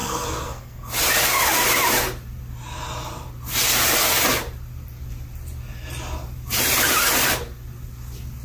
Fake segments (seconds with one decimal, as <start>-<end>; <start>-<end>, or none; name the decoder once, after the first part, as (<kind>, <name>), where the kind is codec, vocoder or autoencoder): 0.0-0.9 (codec, SNAC)